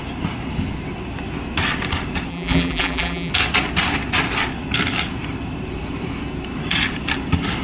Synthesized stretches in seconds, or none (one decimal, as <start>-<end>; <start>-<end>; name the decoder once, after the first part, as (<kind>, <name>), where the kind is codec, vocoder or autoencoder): 2.3-3.3 (vocoder, BigVGAN v2)